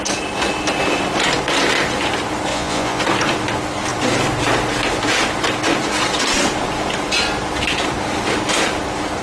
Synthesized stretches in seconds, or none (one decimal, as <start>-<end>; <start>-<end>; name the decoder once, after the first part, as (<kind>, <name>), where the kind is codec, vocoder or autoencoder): 2.5-3.0 (vocoder, Vocos)